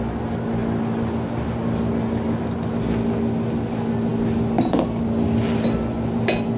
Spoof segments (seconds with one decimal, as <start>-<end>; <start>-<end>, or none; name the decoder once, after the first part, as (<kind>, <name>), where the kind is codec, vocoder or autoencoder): none